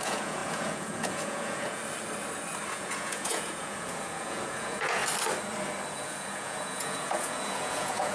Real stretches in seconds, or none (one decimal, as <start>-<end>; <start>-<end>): 1.8-2.7; 5.0-5.9